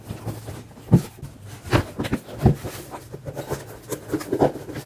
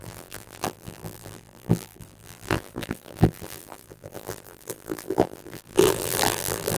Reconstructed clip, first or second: second